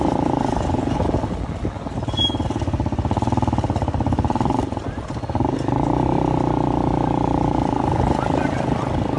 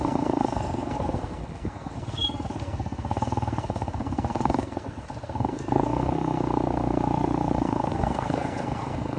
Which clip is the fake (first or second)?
second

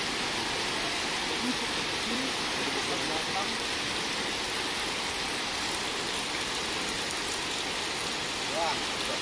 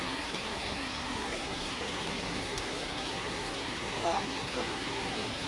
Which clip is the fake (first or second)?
second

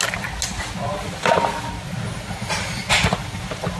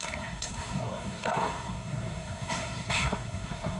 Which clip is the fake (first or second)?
second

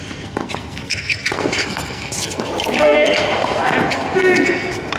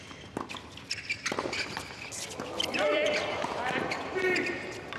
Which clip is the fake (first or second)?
first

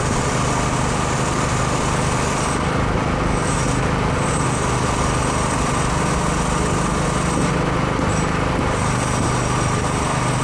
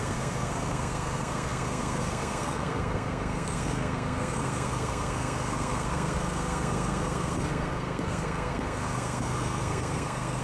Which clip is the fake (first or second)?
second